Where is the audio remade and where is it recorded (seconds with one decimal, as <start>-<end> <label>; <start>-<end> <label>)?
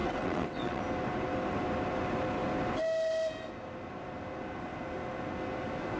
0.0-0.8 remade; 0.8-6.0 recorded